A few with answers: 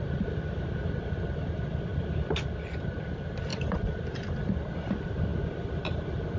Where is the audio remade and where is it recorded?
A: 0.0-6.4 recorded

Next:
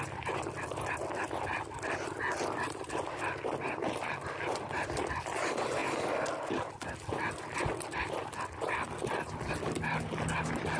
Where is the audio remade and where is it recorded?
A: 0.0-10.8 recorded

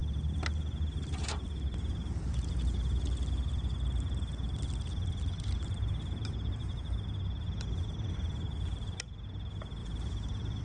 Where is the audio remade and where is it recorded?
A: 0.0-9.8 recorded; 9.8-10.6 remade

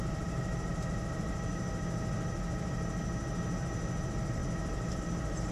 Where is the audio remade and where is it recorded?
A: 0.0-1.5 remade; 1.5-4.0 recorded; 4.0-4.4 remade; 4.4-5.0 recorded; 5.0-5.5 remade

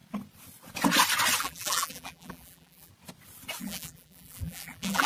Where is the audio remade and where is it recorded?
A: 0.0-1.4 recorded; 1.4-2.9 remade; 2.9-3.6 recorded; 3.6-5.1 remade

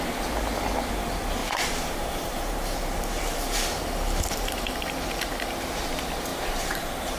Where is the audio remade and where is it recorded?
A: 0.0-1.4 recorded; 1.4-4.9 remade; 4.9-6.3 recorded; 6.3-7.2 remade

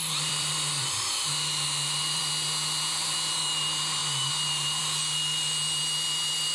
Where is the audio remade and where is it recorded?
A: 0.0-2.2 remade; 2.2-6.5 recorded

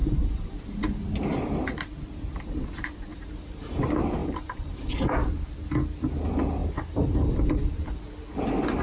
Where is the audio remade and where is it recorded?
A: 0.0-0.6 remade; 0.6-3.1 recorded; 3.1-3.8 remade; 3.8-4.2 recorded; 4.2-4.9 remade; 4.9-6.6 recorded; 6.6-8.0 remade; 8.0-8.8 recorded